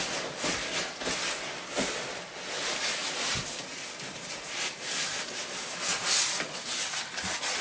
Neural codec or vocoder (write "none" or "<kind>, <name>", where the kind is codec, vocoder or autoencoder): none